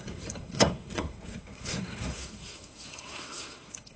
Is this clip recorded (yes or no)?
no